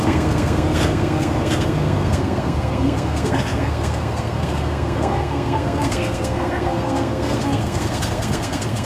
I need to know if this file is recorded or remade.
remade